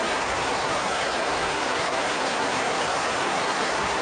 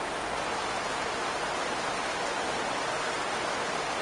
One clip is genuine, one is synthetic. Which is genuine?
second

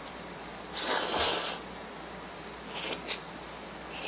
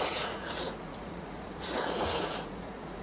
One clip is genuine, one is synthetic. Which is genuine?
first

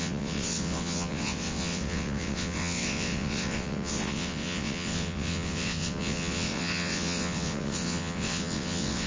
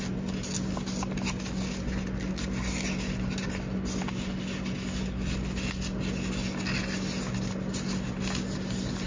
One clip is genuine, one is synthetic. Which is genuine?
second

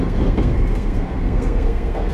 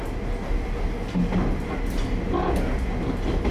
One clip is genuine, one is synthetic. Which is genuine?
second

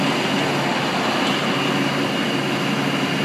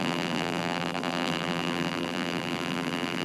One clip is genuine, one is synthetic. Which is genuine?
first